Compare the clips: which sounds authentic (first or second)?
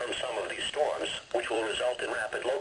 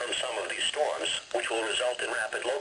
second